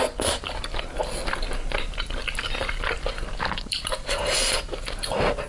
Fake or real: real